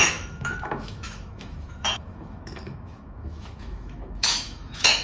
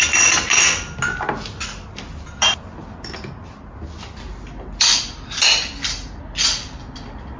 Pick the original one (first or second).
second